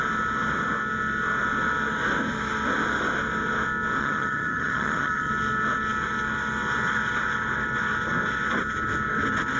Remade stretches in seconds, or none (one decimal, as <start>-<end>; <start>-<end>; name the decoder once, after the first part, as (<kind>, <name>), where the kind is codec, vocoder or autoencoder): 4.0-5.3 (vocoder, HiFi-GAN)